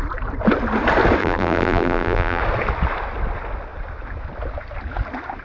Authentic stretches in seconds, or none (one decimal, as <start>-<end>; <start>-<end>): 0.0-1.2; 2.4-5.4